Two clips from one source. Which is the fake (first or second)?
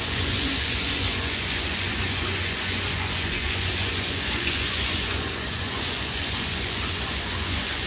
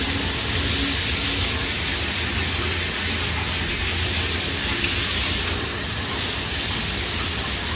first